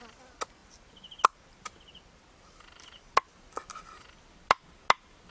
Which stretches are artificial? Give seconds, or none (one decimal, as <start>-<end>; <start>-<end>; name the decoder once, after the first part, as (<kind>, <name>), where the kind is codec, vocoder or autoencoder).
none

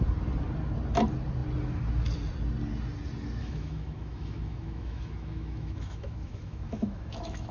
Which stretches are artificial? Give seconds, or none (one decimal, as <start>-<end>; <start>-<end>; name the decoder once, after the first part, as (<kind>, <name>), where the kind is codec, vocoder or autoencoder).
3.4-7.5 (autoencoder, DAC-VAE)